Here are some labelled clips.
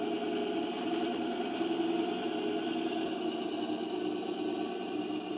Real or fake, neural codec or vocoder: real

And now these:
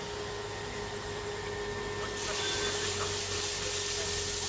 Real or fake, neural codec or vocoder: real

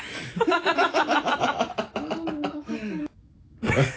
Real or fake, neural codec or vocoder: fake, autoencoder, DAC-VAE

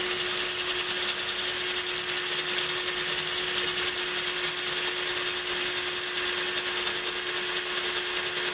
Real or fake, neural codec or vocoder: real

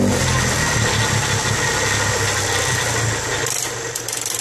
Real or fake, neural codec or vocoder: real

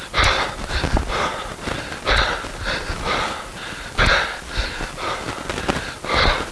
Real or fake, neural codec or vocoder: real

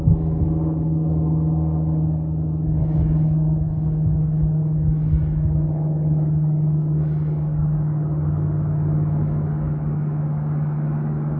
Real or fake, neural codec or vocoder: fake, codec, DAC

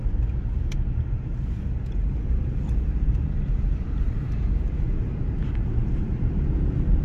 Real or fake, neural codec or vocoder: fake, vocoder, BigVGAN v2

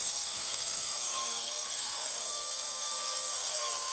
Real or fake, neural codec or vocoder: fake, codec, SNAC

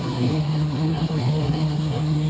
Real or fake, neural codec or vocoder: fake, codec, SNAC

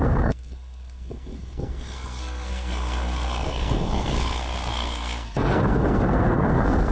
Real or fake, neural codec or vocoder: fake, codec, SNAC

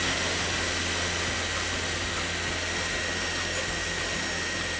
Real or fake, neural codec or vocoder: real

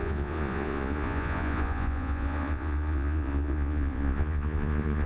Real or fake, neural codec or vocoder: fake, vocoder, Vocos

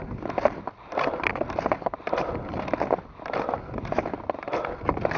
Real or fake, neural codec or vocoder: real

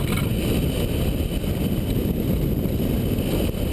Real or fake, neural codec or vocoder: real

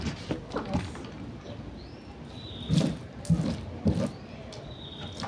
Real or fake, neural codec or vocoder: real